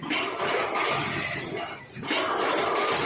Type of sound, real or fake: real